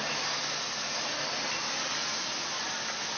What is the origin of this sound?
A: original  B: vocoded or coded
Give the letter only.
A